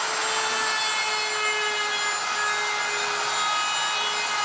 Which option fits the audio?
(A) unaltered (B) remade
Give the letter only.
A